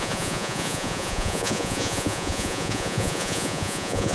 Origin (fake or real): fake